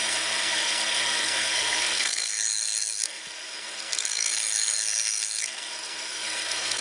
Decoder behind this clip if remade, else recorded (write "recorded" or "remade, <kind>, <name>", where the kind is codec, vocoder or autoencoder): remade, codec, SNAC